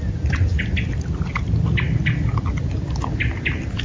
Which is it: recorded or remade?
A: recorded